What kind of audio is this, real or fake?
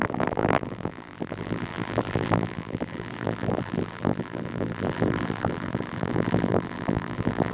fake